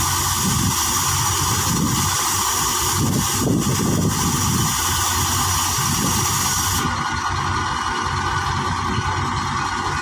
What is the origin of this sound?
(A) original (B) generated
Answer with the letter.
A